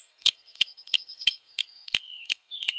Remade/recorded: remade